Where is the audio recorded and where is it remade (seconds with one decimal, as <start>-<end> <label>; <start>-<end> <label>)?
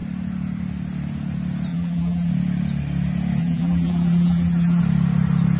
0.0-1.7 recorded; 1.7-2.3 remade; 2.3-3.4 recorded; 3.4-4.8 remade; 4.8-5.6 recorded